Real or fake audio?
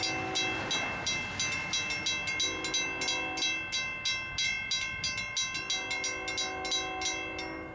real